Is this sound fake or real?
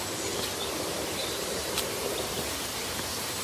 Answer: fake